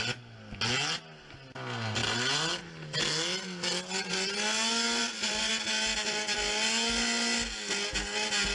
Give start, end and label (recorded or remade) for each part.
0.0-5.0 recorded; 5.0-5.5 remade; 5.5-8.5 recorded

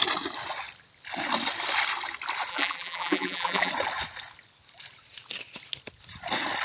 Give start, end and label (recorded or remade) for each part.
0.0-2.5 recorded; 2.5-3.7 remade; 3.7-6.6 recorded

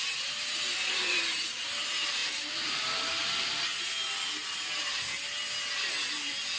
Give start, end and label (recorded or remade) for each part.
0.0-3.7 remade; 3.7-6.6 recorded

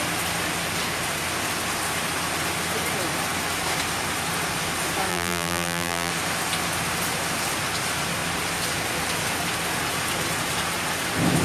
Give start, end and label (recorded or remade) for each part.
0.0-5.1 recorded; 5.1-6.1 remade; 6.1-11.4 recorded

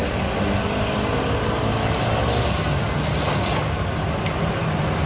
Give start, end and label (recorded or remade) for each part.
0.0-5.1 recorded

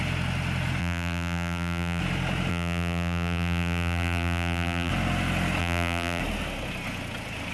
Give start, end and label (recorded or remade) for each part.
0.0-0.8 recorded; 0.8-2.0 remade; 2.0-2.5 recorded; 2.5-4.9 remade; 4.9-5.6 recorded; 5.6-6.2 remade; 6.2-7.5 recorded